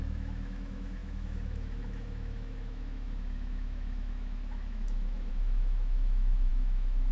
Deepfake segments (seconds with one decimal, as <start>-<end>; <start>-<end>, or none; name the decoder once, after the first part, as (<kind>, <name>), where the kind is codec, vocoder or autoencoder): 0.0-7.1 (autoencoder, DAC-VAE)